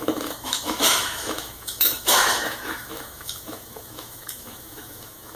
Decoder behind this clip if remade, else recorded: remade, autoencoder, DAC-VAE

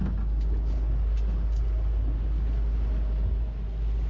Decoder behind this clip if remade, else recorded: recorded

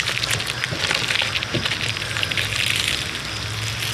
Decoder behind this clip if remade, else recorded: recorded